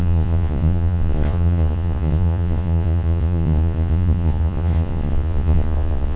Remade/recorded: remade